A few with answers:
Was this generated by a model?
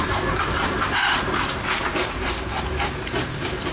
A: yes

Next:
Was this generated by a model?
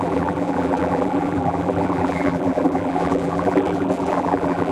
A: yes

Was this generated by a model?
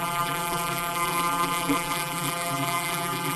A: yes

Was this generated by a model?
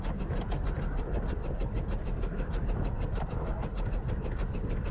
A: yes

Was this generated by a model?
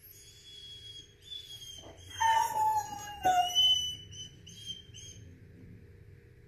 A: no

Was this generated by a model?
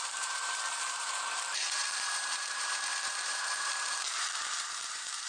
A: yes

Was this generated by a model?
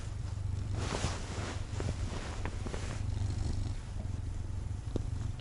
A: yes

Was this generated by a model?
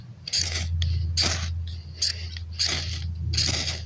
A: no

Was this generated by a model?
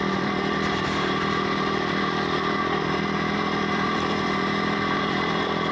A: yes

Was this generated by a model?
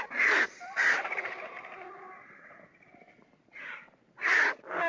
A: yes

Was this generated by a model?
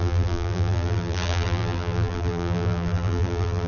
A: yes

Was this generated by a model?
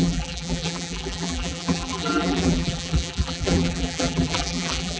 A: yes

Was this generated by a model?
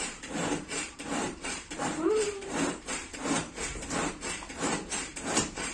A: yes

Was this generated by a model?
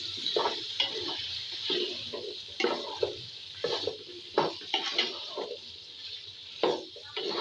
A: yes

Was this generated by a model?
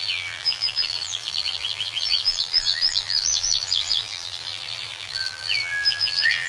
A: yes